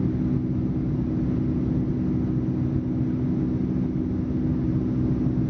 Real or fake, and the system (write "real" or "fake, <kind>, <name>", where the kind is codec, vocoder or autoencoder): real